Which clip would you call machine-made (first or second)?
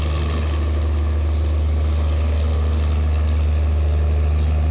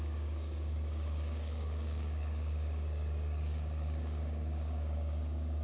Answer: second